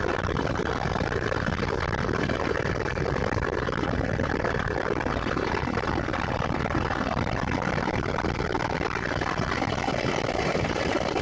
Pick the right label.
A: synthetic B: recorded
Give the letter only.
A